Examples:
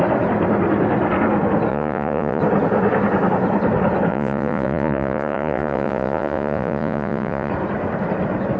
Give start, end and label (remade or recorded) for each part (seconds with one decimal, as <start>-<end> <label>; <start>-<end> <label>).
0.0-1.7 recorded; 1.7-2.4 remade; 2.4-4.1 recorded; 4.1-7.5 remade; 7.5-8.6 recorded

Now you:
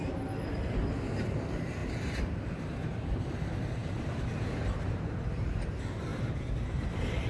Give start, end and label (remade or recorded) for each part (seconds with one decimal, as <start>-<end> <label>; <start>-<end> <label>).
0.0-1.8 recorded; 1.8-3.1 remade; 3.1-3.8 recorded; 3.8-5.5 remade; 5.5-6.1 recorded; 6.1-7.3 remade

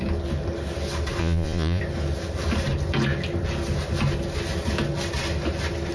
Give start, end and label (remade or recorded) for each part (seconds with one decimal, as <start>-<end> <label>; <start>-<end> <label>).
0.0-1.2 recorded; 1.2-1.8 remade; 1.8-5.9 recorded

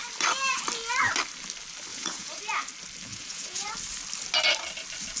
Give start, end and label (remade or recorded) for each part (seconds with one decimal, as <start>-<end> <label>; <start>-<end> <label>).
0.0-1.9 recorded; 1.9-2.4 remade; 2.4-3.1 recorded; 3.1-3.7 remade; 3.7-5.2 recorded

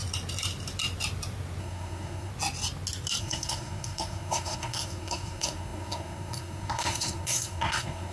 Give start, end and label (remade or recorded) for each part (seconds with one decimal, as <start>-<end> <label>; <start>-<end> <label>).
0.0-1.6 recorded; 1.6-2.3 remade; 2.3-3.2 recorded; 3.2-8.1 remade

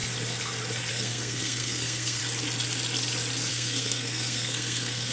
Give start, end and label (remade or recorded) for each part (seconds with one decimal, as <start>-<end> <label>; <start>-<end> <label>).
0.0-0.9 recorded; 0.9-2.2 remade; 2.2-3.5 recorded; 3.5-5.1 remade

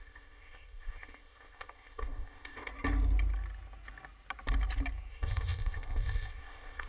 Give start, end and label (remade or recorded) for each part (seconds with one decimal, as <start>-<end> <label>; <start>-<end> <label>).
0.0-2.7 remade; 2.7-5.1 recorded; 5.1-6.9 remade